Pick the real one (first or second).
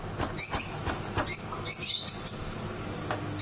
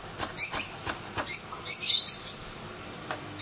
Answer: first